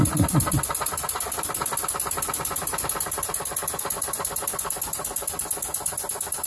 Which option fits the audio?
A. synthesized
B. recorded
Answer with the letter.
B